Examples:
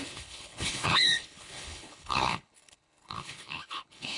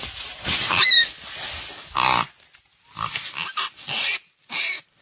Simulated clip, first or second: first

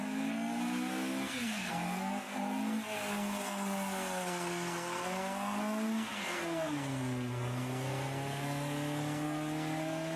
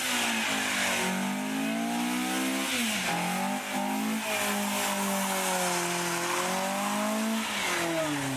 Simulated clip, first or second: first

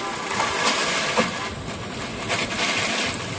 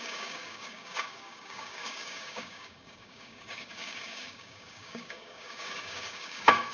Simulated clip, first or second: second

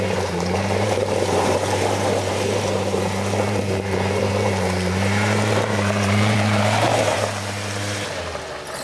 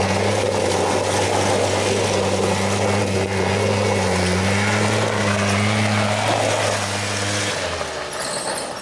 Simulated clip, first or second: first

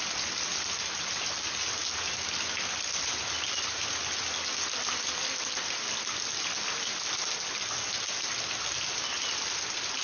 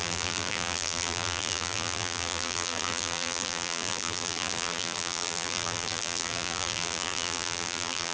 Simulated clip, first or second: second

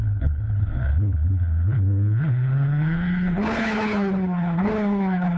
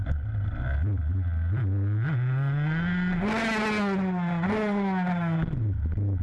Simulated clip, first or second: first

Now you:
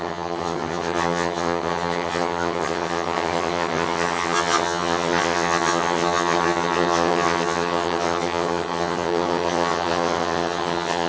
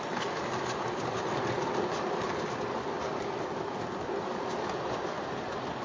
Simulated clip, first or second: first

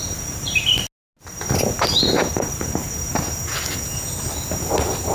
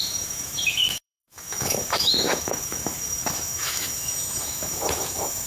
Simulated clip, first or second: second